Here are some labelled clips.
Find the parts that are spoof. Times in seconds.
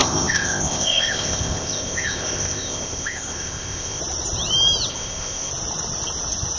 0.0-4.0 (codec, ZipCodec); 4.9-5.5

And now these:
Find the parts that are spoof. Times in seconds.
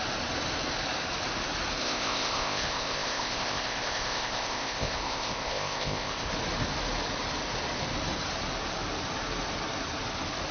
1.8-6.3 (codec, ZipCodec)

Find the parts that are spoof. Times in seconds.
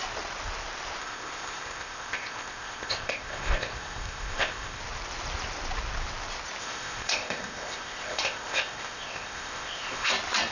1.0-4.8 (codec, ZipCodec); 6.6-10.1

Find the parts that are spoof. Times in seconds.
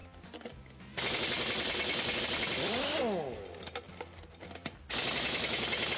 none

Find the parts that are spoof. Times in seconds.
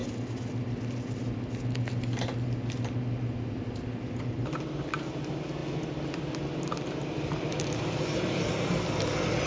none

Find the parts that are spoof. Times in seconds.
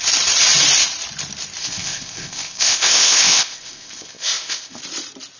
1.6-4.8 (codec, ZipCodec)